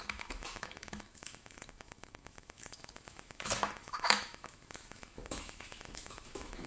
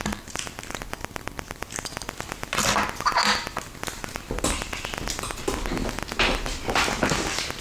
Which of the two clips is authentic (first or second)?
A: second